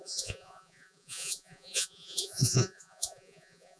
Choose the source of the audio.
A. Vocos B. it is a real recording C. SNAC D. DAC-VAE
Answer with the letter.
A